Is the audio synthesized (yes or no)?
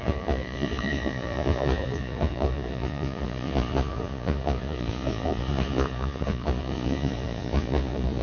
yes